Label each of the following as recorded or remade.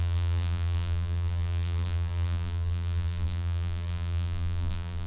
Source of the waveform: remade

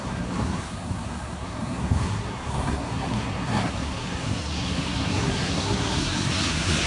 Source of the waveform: remade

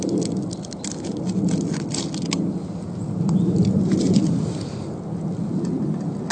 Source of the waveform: recorded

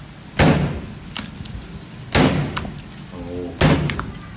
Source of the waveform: recorded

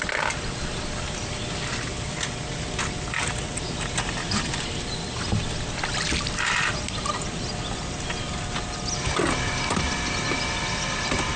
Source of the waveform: recorded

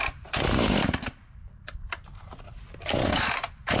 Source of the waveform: remade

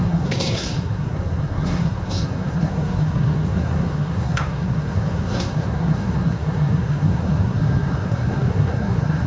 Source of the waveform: remade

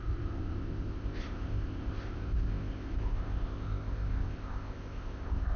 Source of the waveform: remade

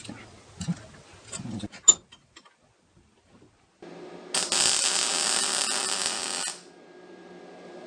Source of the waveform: recorded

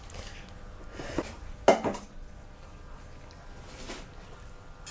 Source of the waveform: recorded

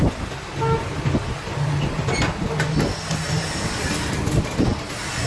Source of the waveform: recorded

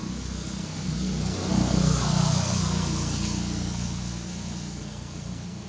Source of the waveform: remade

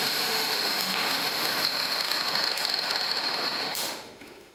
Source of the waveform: remade